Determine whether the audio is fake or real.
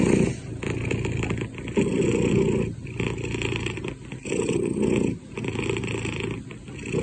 real